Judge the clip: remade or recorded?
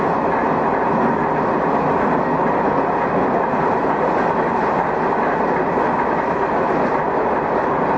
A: recorded